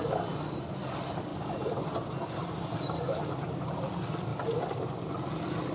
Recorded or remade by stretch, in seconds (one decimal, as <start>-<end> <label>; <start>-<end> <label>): 0.0-5.7 recorded